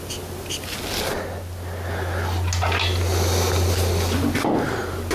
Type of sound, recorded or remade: recorded